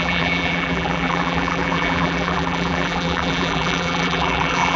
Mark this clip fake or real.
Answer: fake